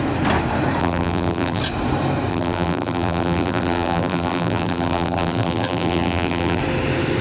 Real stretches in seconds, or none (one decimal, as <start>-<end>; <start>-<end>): 0.0-0.8; 1.6-2.3; 6.6-7.2